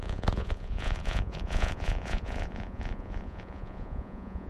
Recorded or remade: remade